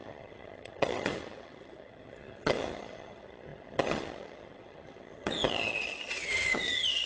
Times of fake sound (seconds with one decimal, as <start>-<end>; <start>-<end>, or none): 0.0-7.1